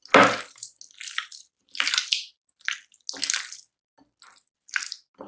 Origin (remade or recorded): recorded